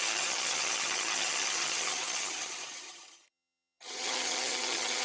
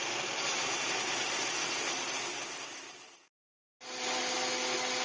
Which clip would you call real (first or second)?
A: second